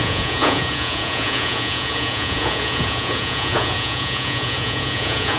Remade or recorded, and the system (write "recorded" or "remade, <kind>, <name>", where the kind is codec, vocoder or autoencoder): remade, vocoder, Vocos